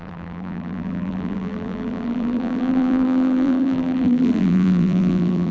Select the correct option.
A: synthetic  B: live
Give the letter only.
A